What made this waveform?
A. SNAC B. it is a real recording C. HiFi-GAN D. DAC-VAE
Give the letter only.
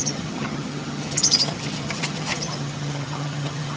C